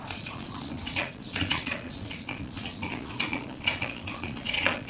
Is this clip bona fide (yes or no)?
no